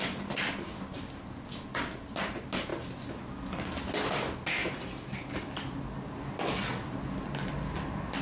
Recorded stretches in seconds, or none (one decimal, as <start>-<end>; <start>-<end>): 0.0-4.6; 5.3-8.2